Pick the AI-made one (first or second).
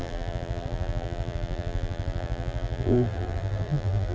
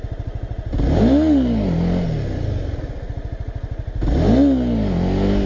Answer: first